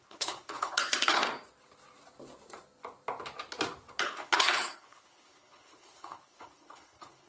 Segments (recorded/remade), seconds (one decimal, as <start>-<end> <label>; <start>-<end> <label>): 0.0-1.2 remade; 1.2-4.0 recorded; 4.0-7.3 remade